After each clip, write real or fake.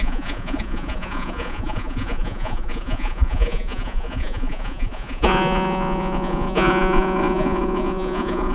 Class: fake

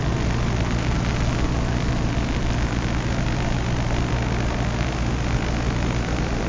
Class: real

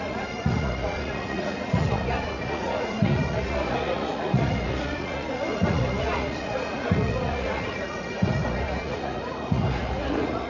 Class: fake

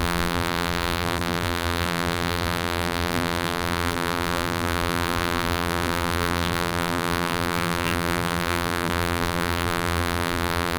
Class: fake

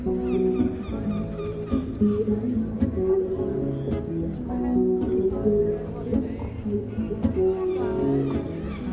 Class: real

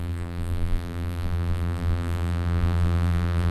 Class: fake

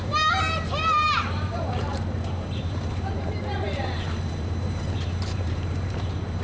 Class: fake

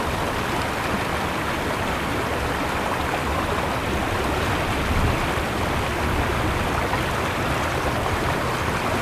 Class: real